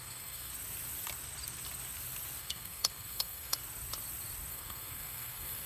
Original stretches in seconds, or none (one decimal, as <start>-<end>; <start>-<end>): 0.5-2.4; 3.6-4.5